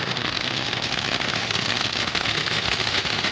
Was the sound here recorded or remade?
remade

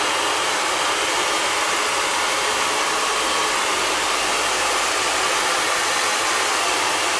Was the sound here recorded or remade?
recorded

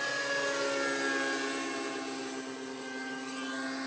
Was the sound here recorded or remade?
recorded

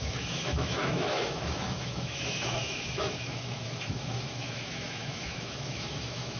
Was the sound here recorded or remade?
remade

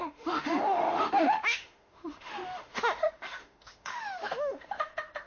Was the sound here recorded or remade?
remade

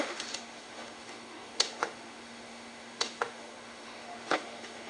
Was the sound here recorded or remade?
remade